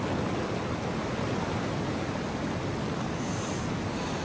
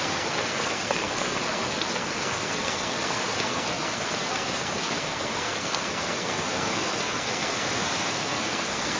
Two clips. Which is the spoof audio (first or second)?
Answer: second